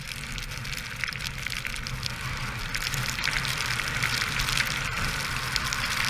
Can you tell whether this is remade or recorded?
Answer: remade